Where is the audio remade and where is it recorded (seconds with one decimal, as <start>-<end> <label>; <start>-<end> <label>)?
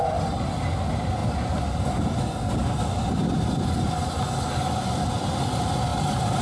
0.0-5.9 recorded; 5.9-6.4 remade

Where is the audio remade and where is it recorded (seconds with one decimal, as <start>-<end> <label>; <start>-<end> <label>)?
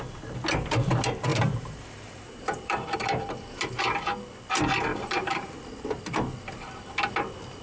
0.0-1.3 recorded; 1.3-3.8 remade; 3.8-4.9 recorded; 4.9-5.6 remade; 5.6-7.6 recorded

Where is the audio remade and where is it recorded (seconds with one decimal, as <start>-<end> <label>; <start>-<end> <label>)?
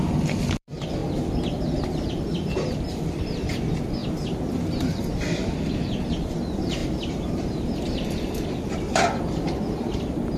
0.0-1.0 remade; 1.0-2.1 recorded; 2.1-4.0 remade; 4.0-5.1 recorded; 5.1-10.4 remade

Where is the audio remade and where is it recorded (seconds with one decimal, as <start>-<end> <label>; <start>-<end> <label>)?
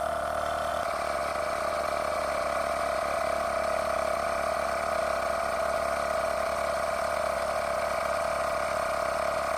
0.0-9.6 recorded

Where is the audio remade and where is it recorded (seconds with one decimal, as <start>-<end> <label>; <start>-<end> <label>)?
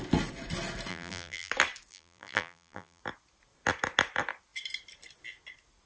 0.0-0.9 recorded; 0.9-1.5 remade; 1.5-1.9 recorded; 1.9-3.0 remade; 3.0-5.9 recorded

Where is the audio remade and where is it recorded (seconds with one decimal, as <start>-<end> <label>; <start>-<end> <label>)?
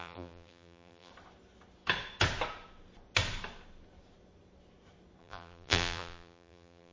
0.0-1.1 remade; 1.1-5.2 recorded; 5.2-6.9 remade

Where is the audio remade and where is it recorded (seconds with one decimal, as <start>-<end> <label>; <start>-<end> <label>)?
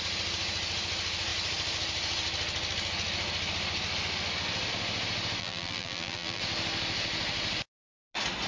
0.0-5.4 recorded; 5.4-6.4 remade; 6.4-8.5 recorded